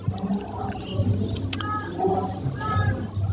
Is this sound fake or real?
real